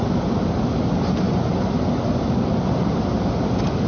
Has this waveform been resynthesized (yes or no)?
no